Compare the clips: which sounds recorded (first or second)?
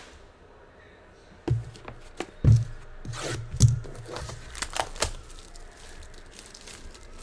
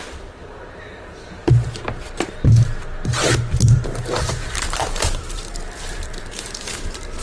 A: first